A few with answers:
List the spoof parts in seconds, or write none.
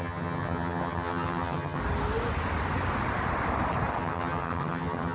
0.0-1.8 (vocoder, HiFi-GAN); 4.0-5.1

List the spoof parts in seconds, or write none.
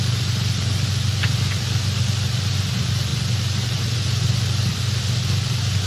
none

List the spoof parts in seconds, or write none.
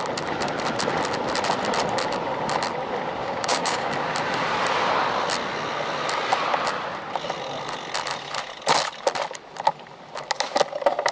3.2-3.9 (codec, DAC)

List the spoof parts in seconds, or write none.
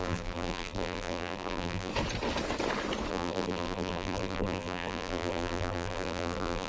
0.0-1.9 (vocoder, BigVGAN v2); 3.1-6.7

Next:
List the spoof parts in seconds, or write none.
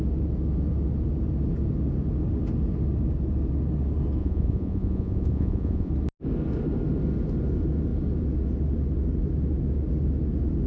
4.2-5.9 (vocoder, Vocos)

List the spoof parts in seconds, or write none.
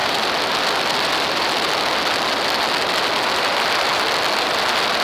none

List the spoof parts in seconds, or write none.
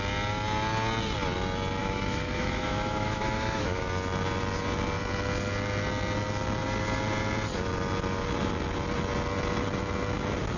1.8-3.8 (autoencoder, DAC-VAE)